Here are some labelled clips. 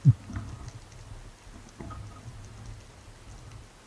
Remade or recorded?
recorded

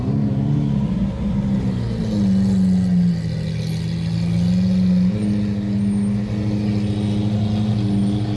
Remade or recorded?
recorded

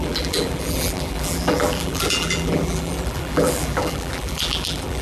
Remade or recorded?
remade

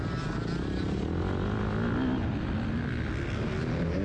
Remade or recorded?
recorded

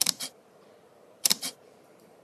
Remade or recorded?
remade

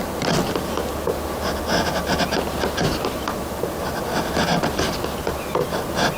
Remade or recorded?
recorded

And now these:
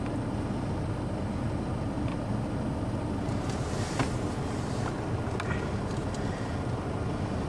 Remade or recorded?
recorded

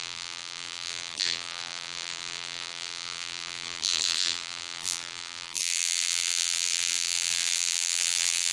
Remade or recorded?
remade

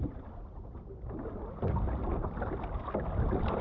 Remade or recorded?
recorded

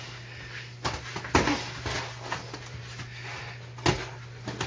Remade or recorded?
recorded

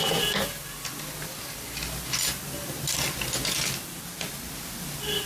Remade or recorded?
recorded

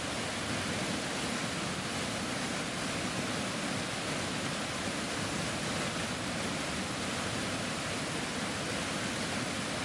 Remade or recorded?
recorded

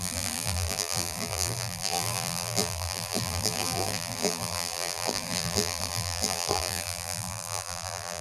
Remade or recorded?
remade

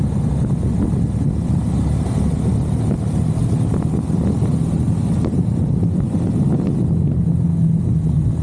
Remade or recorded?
recorded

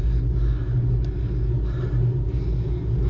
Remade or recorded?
recorded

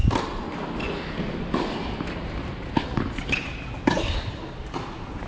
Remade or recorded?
recorded